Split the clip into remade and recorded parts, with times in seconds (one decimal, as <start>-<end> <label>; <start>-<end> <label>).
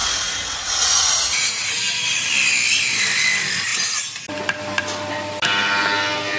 0.0-1.7 remade; 1.7-6.4 recorded